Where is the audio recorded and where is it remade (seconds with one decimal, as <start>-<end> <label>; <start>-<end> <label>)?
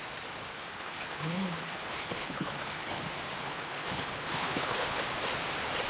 0.0-0.5 recorded; 0.5-3.0 remade; 3.0-3.4 recorded; 3.4-5.0 remade; 5.0-5.9 recorded